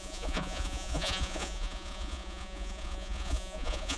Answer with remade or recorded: remade